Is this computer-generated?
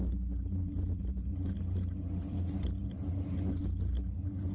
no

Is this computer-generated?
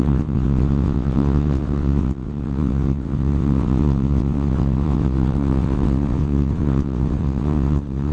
yes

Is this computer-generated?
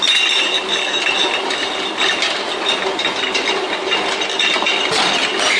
no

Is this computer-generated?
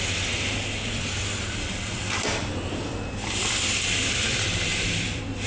yes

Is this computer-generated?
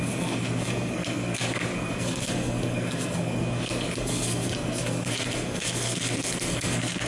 yes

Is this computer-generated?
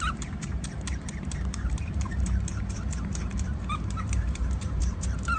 yes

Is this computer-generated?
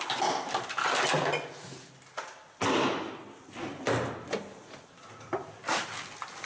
no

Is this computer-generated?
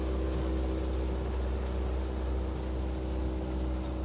no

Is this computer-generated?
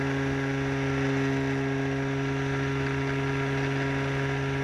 no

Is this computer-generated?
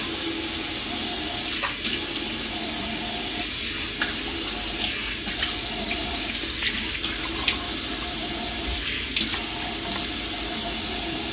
no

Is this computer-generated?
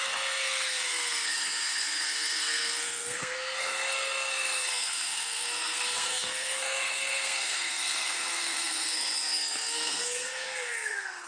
yes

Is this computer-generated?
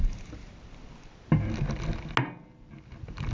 no